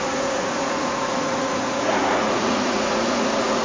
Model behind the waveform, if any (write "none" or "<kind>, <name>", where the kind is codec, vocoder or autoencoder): vocoder, Vocos